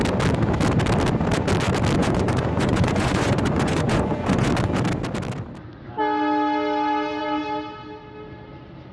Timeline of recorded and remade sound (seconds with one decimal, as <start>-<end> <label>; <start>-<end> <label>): 0.0-2.0 recorded; 2.0-4.5 remade; 4.5-8.9 recorded